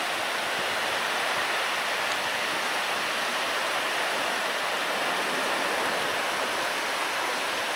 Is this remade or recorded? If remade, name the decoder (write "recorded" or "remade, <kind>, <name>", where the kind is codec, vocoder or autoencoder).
recorded